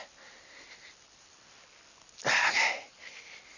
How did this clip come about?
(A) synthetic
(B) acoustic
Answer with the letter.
B